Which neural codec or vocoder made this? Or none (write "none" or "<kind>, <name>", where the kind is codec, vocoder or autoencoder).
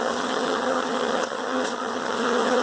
vocoder, HiFi-GAN